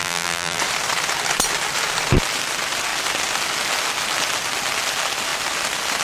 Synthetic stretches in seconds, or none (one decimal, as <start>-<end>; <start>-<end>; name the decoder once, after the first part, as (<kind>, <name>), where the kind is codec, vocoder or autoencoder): 0.0-0.6 (vocoder, BigVGAN v2)